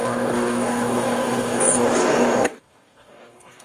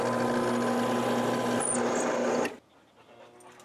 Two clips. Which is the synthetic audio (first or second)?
first